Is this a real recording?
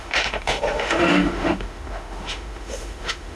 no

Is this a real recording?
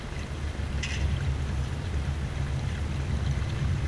yes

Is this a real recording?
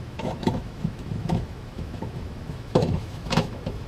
no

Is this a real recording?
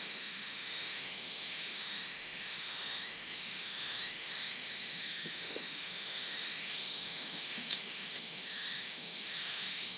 no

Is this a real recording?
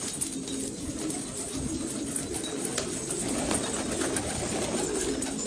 yes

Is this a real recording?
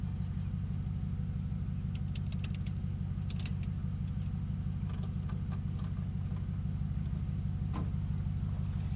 yes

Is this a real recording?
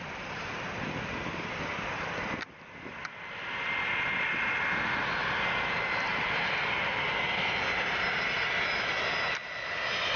yes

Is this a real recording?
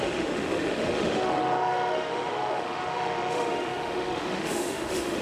no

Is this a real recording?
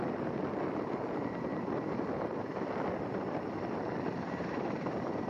yes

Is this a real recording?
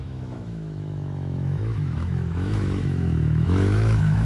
no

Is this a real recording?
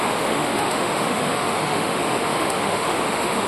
no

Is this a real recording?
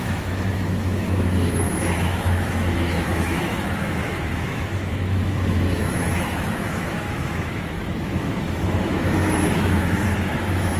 no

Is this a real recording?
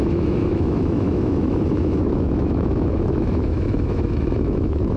no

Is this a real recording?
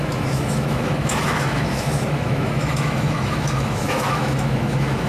no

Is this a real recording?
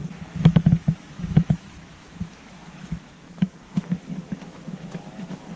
no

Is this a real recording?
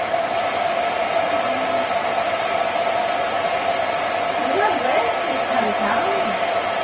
yes